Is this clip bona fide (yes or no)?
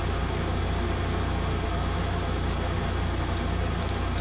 yes